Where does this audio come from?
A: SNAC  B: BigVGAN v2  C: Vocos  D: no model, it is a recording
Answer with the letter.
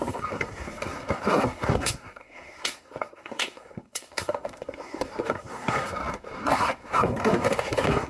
A